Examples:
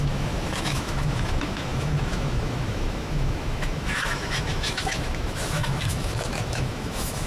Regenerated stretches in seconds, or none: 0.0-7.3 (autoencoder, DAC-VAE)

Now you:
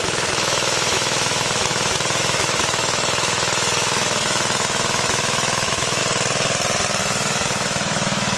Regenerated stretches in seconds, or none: 0.0-6.0 (autoencoder, DAC-VAE); 7.0-8.4

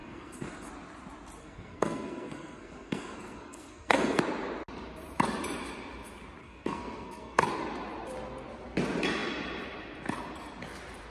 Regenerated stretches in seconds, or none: 0.0-0.7 (codec, SNAC); 1.4-4.2; 6.4-7.5

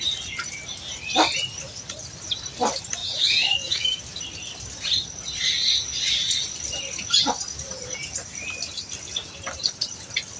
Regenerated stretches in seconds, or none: 3.0-4.0 (autoencoder, DAC-VAE)

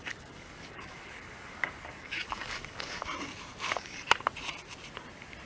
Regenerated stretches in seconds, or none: 0.0-3.0 (codec, DAC)

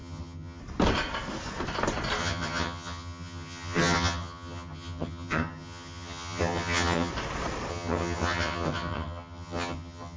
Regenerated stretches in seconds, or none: 0.0-0.6 (vocoder, HiFi-GAN); 2.2-7.1; 7.7-10.2

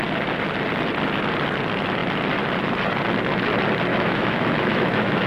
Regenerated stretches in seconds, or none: 3.9-5.3 (autoencoder, DAC-VAE)